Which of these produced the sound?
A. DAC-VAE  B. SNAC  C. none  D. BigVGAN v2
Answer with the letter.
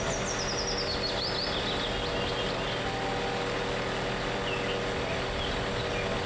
C